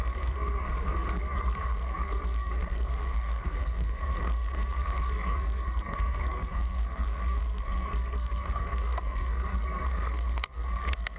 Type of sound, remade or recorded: remade